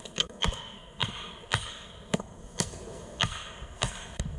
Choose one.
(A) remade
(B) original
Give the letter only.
A